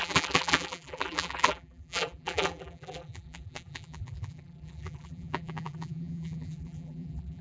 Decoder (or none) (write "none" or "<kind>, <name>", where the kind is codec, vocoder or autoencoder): vocoder, BigVGAN v2